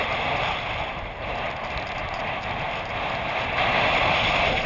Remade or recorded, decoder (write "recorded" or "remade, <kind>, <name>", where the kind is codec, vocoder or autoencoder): recorded